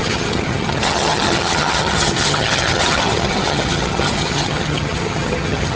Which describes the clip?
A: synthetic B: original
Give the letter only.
A